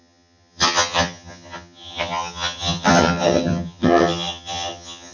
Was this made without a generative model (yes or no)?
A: no